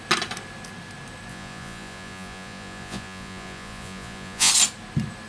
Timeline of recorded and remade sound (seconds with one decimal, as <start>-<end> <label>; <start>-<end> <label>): 0.0-1.3 recorded; 1.3-4.5 remade; 4.5-5.3 recorded